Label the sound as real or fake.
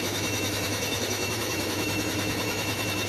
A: fake